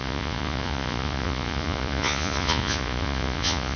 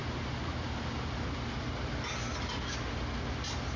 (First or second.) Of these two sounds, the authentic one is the second